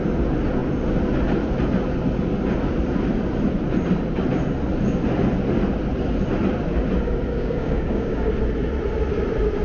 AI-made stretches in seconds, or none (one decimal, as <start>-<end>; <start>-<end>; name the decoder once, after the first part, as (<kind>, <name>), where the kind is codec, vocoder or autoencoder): 7.3-8.3 (codec, DAC)